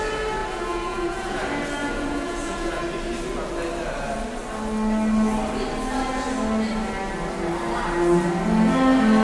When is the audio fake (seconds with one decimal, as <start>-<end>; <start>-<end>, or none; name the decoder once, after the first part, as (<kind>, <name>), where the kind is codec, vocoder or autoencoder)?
0.4-1.4 (vocoder, Vocos); 1.8-2.8